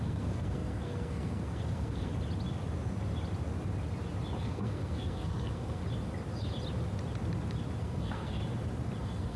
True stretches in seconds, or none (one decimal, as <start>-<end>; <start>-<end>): 2.1-4.4; 5.8-7.8; 8.4-9.0